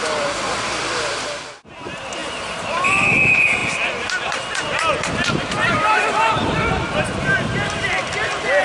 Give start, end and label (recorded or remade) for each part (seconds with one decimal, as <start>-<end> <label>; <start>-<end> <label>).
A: 0.0-8.6 remade